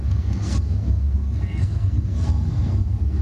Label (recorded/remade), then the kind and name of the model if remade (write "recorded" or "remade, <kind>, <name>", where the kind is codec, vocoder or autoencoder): remade, codec, SNAC